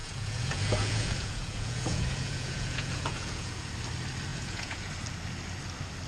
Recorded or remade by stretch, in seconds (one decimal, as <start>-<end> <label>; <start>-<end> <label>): 0.0-3.7 remade; 3.7-4.3 recorded; 4.3-4.9 remade; 4.9-6.1 recorded